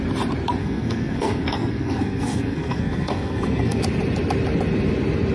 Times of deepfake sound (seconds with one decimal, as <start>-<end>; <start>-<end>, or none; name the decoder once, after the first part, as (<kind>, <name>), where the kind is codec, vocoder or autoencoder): 0.6-3.8 (codec, SNAC)